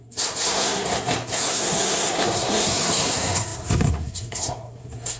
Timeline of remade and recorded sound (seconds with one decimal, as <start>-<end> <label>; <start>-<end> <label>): 0.0-5.2 remade